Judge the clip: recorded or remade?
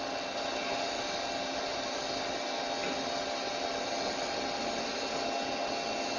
recorded